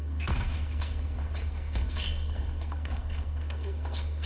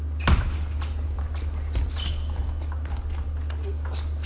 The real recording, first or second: second